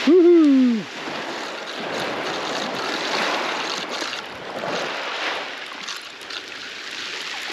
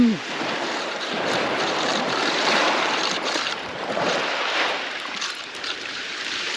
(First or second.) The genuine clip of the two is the first